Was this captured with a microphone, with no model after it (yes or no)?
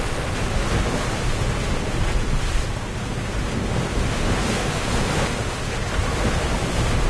yes